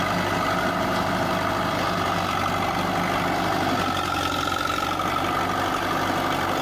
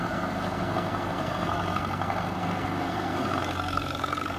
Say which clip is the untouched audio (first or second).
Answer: first